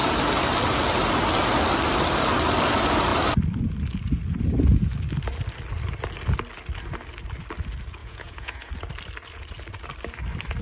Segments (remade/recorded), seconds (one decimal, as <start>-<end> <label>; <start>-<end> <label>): 0.0-8.0 recorded; 8.0-8.7 remade; 8.7-10.6 recorded

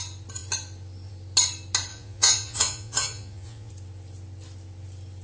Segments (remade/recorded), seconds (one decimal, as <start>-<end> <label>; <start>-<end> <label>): 0.0-1.9 recorded; 1.9-3.7 remade; 3.7-5.2 recorded

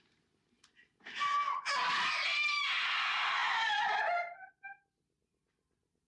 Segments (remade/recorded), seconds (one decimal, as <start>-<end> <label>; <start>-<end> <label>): 0.0-6.1 recorded

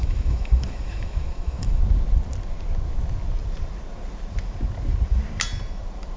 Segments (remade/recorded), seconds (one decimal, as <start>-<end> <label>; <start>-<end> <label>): 0.0-1.8 remade; 1.8-6.2 recorded

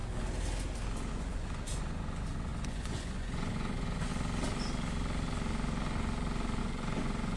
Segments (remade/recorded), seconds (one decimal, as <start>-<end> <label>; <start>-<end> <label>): 0.0-1.1 recorded; 1.1-4.1 remade; 4.1-6.6 recorded; 6.6-7.4 remade

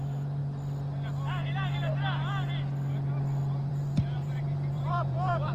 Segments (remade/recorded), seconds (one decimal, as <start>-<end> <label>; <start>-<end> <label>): 0.0-0.4 remade; 0.4-3.7 recorded; 3.7-5.5 remade